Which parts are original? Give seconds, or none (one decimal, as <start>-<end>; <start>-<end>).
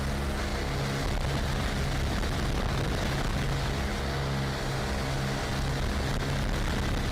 0.0-7.1